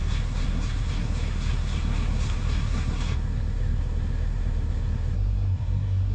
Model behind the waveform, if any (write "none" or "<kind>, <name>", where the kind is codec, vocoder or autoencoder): codec, SNAC